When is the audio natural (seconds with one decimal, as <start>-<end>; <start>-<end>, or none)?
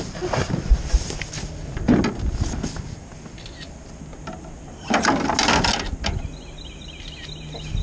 0.0-7.8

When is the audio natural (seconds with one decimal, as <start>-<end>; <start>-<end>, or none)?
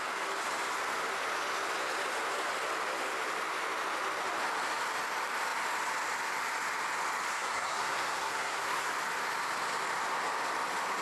0.0-7.3; 8.9-11.0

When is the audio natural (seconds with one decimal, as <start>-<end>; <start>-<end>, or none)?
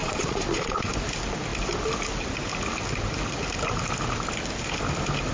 0.9-5.3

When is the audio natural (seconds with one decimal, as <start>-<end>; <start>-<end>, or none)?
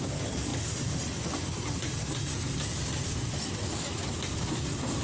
0.0-5.0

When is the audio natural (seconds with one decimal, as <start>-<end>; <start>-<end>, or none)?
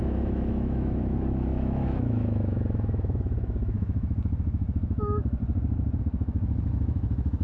5.4-6.0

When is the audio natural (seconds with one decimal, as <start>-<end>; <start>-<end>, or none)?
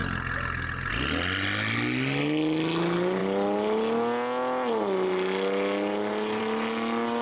0.0-7.2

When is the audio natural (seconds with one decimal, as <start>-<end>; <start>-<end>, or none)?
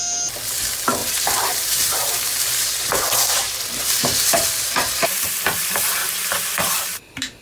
0.0-1.0; 5.4-6.0